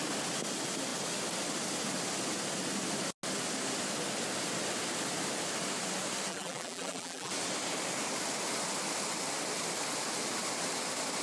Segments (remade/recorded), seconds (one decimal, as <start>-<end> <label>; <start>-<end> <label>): 0.0-6.3 recorded; 6.3-7.3 remade; 7.3-11.2 recorded